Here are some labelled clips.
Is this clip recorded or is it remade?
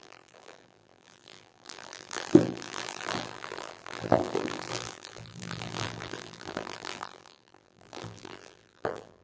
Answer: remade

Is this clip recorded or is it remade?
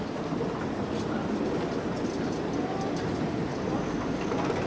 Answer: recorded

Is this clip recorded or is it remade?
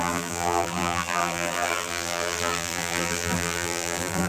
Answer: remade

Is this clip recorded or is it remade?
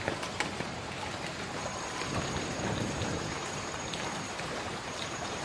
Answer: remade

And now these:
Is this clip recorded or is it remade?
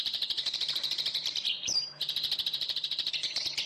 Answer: remade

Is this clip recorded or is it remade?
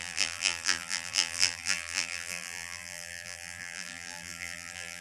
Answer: remade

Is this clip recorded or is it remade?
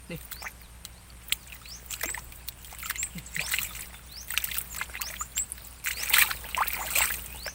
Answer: recorded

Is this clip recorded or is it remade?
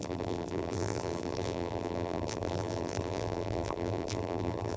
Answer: remade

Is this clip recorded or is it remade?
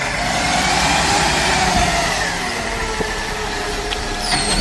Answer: remade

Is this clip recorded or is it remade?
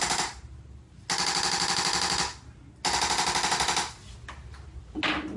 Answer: recorded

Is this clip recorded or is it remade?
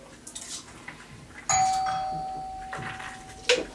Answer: recorded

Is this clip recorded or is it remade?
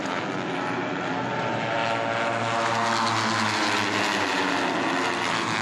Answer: recorded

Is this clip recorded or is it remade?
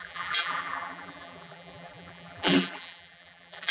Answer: remade